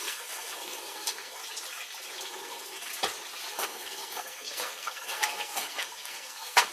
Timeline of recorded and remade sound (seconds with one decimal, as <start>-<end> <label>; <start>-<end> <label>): 0.0-1.4 remade; 1.4-2.2 recorded; 2.2-2.9 remade; 2.9-3.5 recorded; 3.5-6.7 remade